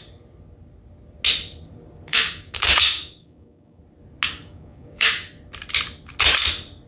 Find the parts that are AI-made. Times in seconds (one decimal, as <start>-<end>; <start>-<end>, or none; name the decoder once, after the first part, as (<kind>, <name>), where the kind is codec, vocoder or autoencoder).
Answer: 2.1-3.8 (codec, DAC); 4.4-5.3